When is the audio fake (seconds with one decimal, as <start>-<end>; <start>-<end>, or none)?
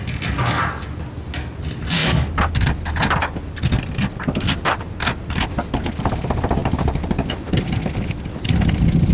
none